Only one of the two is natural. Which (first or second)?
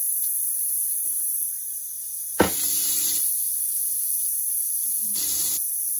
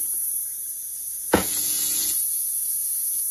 first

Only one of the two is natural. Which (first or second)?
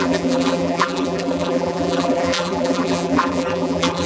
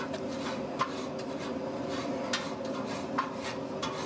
second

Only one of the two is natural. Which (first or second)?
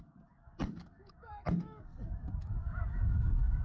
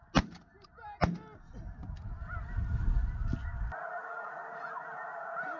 second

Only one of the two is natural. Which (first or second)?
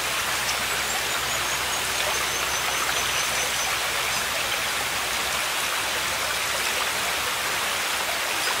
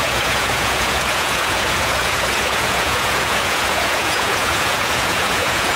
first